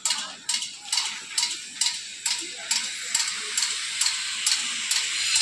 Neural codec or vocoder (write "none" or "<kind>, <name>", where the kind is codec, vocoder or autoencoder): none